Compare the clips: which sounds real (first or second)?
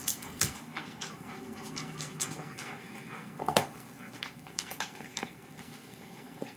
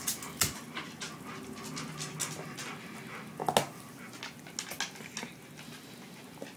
second